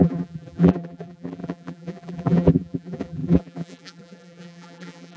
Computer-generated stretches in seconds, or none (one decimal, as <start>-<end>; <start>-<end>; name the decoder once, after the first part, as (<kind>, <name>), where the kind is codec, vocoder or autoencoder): 0.0-5.2 (vocoder, BigVGAN v2)